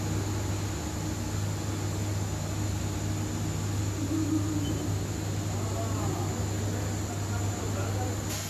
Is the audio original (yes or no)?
yes